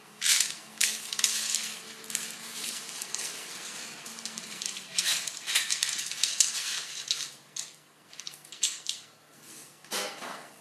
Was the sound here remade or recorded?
remade